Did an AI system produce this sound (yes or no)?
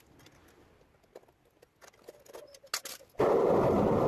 no